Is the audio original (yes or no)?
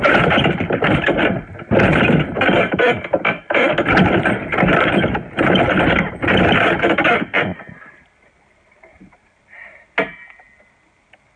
yes